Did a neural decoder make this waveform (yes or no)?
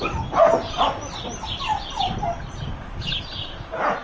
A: no